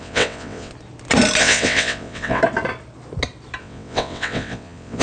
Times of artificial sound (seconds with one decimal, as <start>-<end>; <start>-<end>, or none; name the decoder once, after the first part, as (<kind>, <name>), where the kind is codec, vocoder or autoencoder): 0.0-0.7 (vocoder, WaveNeXt); 1.4-2.4; 3.6-5.0